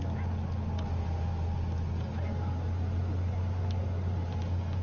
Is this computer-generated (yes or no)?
no